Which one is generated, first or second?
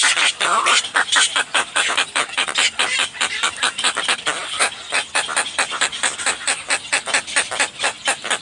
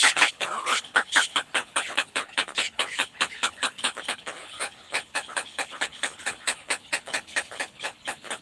second